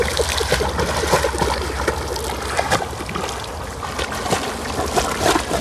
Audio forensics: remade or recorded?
recorded